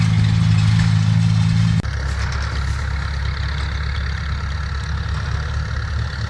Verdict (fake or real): real